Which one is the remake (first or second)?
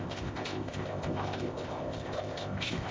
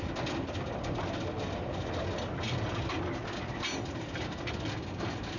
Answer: first